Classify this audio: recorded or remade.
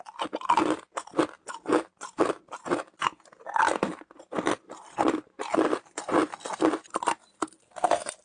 remade